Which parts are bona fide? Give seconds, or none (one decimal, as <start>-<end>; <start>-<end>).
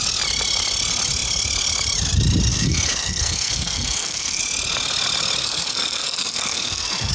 0.0-2.5; 4.4-5.4